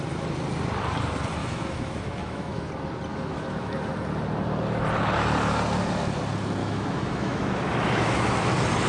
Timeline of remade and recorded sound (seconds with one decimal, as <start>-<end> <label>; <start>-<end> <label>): 0.0-1.4 recorded; 1.4-2.7 remade; 2.7-3.1 recorded; 3.1-3.9 remade; 3.9-6.6 recorded; 6.6-8.5 remade; 8.5-8.9 recorded